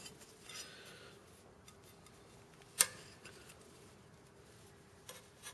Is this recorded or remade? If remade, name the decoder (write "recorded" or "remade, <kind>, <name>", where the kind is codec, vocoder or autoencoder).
recorded